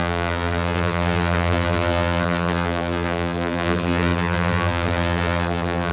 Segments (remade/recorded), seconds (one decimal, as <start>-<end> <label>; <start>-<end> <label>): 0.0-5.9 remade